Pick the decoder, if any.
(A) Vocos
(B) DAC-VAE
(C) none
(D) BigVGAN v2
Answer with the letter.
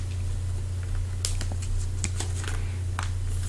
C